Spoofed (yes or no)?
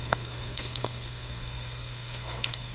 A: yes